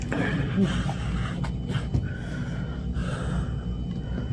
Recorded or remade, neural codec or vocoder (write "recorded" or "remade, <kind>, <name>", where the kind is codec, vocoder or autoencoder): recorded